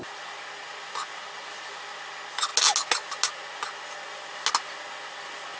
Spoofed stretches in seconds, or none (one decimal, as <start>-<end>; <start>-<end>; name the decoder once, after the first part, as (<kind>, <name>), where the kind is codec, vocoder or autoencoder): none